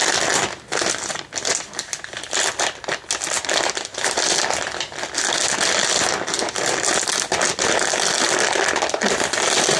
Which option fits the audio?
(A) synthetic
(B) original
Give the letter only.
B